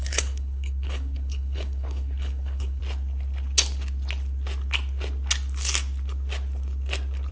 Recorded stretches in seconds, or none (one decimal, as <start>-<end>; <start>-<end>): 2.8-7.3